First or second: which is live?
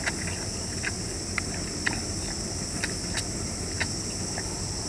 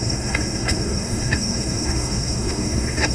first